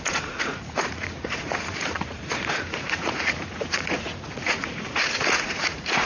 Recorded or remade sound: remade